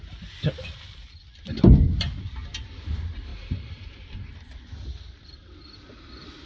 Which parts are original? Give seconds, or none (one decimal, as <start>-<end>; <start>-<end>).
0.0-3.3; 4.3-6.5